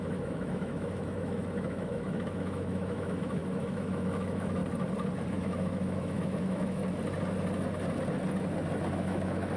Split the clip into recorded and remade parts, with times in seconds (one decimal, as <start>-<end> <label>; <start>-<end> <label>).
0.0-4.6 remade; 4.6-5.3 recorded; 5.3-6.8 remade; 6.8-8.9 recorded; 8.9-9.6 remade